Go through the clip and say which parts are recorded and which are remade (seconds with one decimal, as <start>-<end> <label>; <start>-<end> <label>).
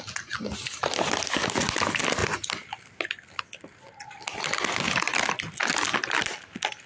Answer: 0.0-6.9 recorded